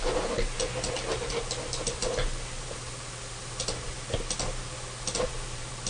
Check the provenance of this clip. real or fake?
real